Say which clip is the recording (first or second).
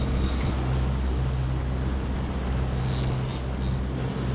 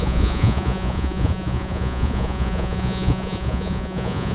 first